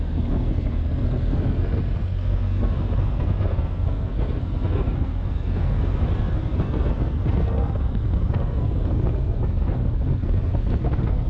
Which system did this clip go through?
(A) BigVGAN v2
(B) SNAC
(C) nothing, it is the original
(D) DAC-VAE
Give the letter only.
B